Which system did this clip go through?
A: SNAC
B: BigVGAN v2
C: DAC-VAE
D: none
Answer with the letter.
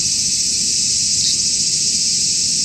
D